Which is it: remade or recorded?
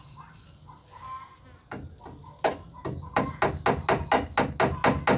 recorded